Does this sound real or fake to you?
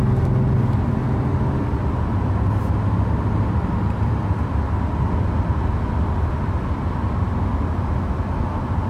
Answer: real